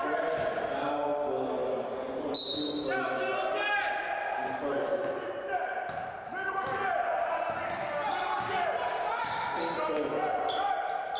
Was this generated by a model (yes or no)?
no